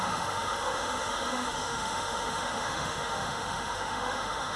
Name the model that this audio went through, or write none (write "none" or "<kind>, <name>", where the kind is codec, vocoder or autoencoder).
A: autoencoder, DAC-VAE